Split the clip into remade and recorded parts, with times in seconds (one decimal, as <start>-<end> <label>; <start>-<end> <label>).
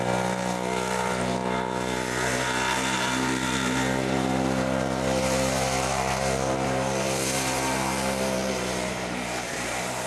0.0-10.1 remade